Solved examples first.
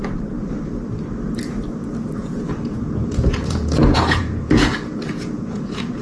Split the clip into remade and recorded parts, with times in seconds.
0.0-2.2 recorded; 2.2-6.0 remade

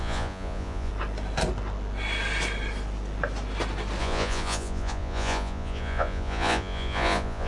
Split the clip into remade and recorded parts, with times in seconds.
0.0-0.9 remade; 0.9-4.0 recorded; 4.0-7.5 remade

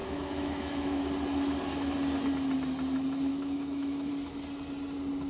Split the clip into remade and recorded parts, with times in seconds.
0.0-1.0 remade; 1.0-3.3 recorded; 3.3-4.1 remade; 4.1-5.3 recorded

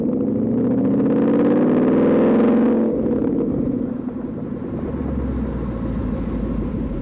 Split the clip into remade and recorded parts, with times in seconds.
0.0-3.2 recorded; 3.2-4.2 remade; 4.2-6.0 recorded; 6.0-7.0 remade

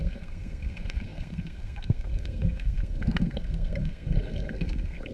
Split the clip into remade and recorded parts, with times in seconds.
0.0-5.1 remade

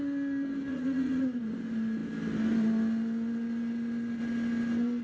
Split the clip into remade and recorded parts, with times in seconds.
0.0-0.7 recorded; 0.7-1.4 remade; 1.4-5.0 recorded

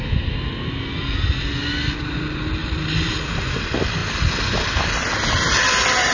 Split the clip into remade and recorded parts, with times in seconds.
0.0-6.1 recorded

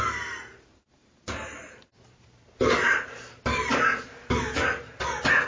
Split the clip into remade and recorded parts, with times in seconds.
0.0-1.0 recorded; 1.0-4.3 remade; 4.3-5.5 recorded